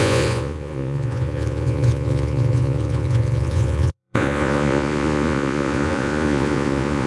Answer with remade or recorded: remade